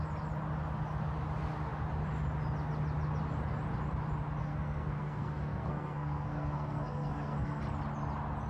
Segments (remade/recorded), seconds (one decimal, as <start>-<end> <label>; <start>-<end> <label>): 0.0-4.4 recorded; 4.4-7.6 remade; 7.6-8.5 recorded